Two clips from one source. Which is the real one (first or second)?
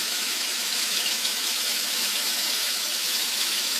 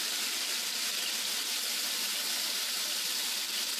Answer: second